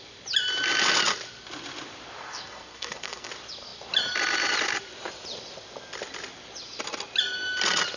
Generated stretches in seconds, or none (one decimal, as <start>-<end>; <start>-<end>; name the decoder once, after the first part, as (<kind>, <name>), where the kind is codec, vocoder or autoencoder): 2.2-3.3 (codec, SNAC)